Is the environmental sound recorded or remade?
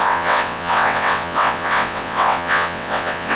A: remade